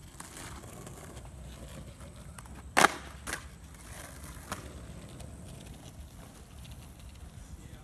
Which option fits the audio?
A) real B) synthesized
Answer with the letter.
A